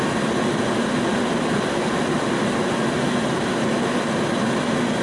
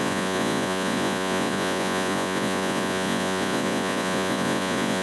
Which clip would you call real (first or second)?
first